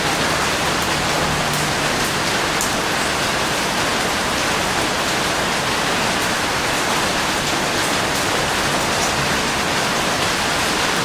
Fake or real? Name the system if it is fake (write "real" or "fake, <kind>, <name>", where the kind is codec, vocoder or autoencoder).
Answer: real